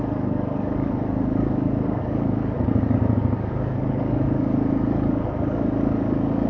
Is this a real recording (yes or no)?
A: no